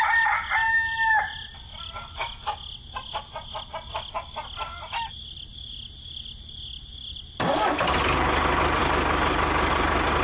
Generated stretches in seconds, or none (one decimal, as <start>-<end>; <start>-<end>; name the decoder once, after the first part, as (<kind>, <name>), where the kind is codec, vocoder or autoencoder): none